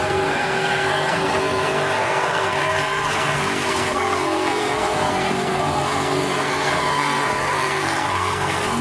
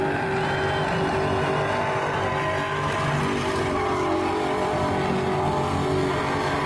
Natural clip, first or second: second